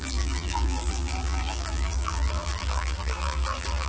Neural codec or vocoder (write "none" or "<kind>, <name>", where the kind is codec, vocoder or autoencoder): vocoder, BigVGAN v2